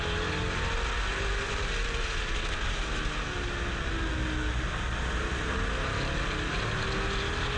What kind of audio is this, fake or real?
real